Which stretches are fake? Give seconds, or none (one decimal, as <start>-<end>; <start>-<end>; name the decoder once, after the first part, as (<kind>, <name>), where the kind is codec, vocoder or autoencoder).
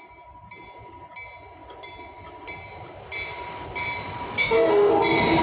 4.4-4.9 (autoencoder, DAC-VAE)